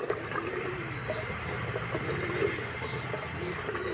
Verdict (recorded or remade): recorded